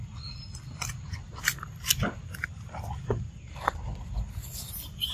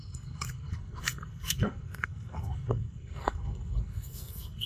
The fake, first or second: second